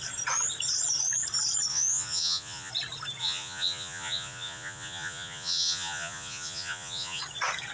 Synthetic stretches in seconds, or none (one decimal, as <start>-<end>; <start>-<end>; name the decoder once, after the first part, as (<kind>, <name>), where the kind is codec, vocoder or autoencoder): 1.7-2.7 (vocoder, Vocos); 3.2-7.2